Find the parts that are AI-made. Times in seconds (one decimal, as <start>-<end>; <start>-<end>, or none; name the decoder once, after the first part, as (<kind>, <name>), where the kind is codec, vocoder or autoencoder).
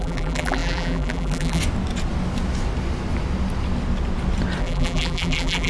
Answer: 0.0-1.6 (vocoder, BigVGAN v2); 4.6-5.7